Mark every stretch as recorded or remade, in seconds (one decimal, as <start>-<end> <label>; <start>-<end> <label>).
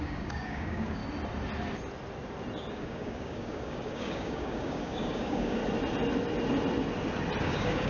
0.0-1.0 remade; 1.0-2.7 recorded; 2.7-5.6 remade; 5.6-7.4 recorded; 7.4-7.9 remade